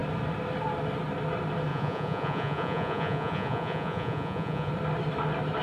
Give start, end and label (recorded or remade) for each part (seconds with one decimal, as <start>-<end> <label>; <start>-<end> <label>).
0.0-1.7 recorded; 1.7-4.7 remade; 4.7-5.6 recorded